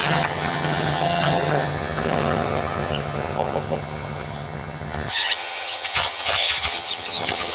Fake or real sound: fake